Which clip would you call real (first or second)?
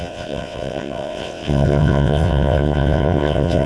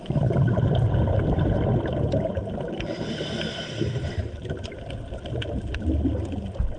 second